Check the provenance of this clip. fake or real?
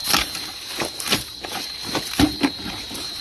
fake